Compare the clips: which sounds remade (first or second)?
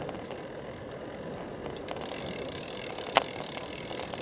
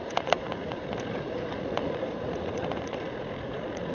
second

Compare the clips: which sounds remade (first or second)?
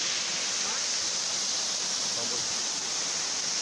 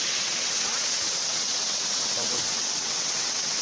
second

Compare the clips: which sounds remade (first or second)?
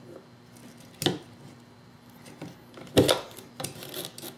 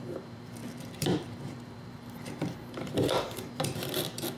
second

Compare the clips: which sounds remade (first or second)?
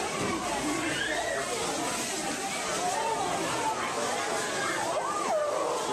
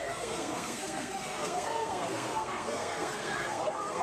second